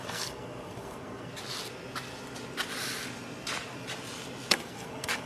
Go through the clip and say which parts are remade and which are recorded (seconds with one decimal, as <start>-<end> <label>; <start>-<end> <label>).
0.0-1.3 remade; 1.3-4.5 recorded; 4.5-5.3 remade